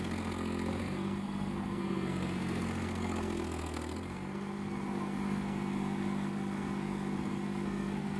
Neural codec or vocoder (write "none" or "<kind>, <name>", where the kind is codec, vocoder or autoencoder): codec, SNAC